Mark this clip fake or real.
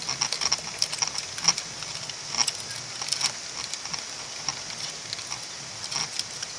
real